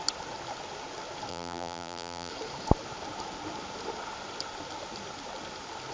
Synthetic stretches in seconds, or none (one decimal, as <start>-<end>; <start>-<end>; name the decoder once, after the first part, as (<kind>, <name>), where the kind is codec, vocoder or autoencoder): 1.3-2.3 (vocoder, BigVGAN v2)